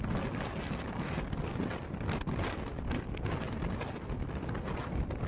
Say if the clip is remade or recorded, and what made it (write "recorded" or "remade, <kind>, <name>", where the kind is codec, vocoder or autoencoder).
recorded